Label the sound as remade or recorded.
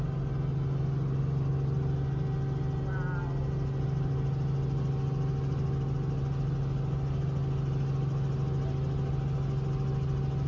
recorded